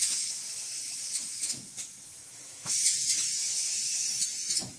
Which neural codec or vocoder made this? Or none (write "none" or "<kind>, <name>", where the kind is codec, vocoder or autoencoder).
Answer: autoencoder, DAC-VAE